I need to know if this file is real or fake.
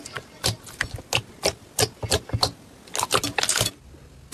real